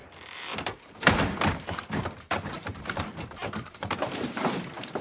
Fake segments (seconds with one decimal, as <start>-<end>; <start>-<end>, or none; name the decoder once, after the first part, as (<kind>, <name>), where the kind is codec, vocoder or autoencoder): 0.0-5.0 (vocoder, BigVGAN v2)